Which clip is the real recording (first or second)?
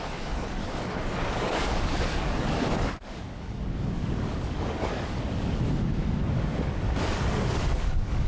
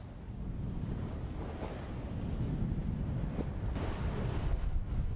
second